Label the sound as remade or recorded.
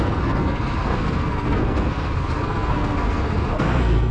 remade